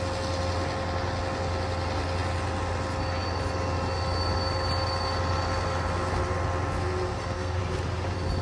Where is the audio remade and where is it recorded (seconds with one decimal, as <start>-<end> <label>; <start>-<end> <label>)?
0.0-7.1 recorded; 7.1-7.6 remade; 7.6-8.4 recorded